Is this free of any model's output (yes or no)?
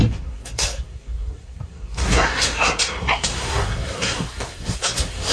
no